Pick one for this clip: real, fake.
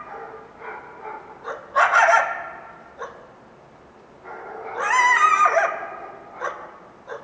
real